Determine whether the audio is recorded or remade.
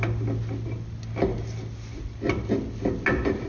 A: recorded